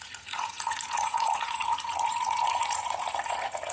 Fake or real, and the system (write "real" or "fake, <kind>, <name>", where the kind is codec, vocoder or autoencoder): fake, vocoder, Vocos